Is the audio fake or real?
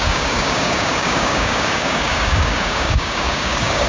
fake